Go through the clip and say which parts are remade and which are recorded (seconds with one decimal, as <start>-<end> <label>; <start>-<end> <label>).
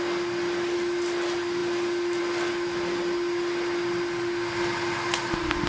0.0-5.7 recorded